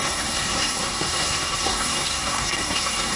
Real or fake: fake